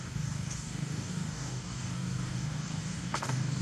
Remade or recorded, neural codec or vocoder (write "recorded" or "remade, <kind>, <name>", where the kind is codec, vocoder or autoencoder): remade, codec, DAC